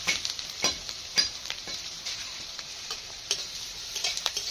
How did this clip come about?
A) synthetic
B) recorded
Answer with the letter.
A